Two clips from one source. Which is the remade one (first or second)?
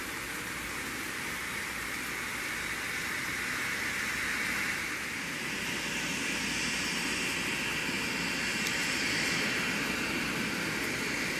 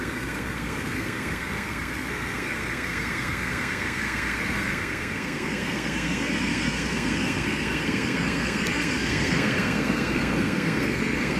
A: second